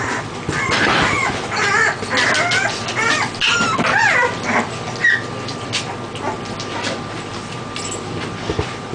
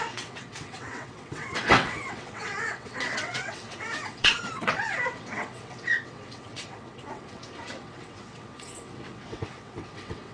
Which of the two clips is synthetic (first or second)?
second